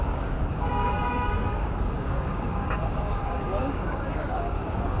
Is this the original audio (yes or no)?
no